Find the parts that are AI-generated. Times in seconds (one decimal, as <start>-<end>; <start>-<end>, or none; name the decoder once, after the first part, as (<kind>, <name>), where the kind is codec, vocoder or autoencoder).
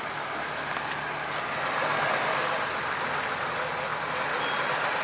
none